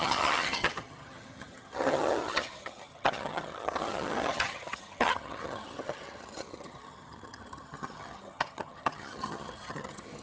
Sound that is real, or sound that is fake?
fake